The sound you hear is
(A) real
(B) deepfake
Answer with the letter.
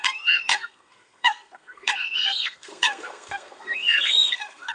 B